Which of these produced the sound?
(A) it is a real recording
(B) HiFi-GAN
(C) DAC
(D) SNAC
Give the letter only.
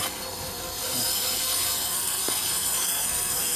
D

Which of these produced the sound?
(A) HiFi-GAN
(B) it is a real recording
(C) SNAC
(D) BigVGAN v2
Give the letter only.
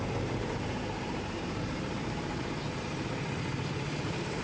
D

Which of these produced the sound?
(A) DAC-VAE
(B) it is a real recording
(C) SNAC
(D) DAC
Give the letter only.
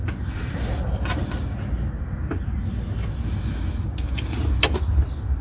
B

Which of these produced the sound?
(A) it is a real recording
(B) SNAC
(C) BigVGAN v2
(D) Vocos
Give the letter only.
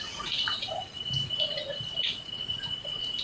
D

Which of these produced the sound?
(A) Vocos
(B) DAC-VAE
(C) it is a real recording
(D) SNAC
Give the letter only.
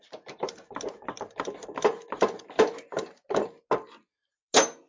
C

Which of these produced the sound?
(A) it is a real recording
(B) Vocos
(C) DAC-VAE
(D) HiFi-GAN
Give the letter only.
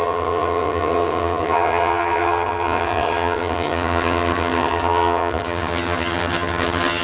D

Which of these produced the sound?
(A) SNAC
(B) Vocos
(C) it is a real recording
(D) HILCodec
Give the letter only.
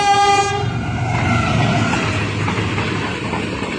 C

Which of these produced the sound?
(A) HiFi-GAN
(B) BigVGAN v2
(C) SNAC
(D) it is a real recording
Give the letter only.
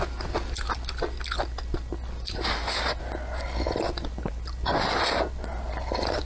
D